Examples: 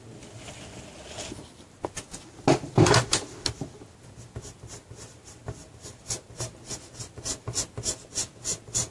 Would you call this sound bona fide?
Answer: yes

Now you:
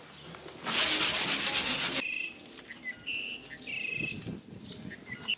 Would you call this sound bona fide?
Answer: yes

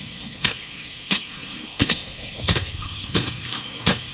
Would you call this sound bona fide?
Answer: no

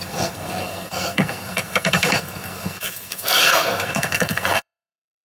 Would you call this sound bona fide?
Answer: no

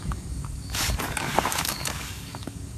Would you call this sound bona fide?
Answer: no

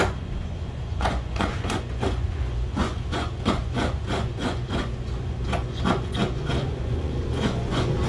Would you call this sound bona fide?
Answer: no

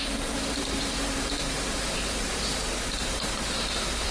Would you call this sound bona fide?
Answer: no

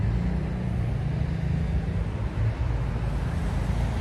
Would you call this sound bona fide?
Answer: yes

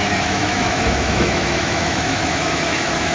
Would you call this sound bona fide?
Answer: no